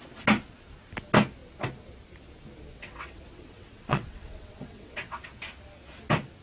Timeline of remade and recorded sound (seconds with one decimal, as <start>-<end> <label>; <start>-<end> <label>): 0.0-2.7 recorded; 2.7-5.3 remade; 5.3-6.4 recorded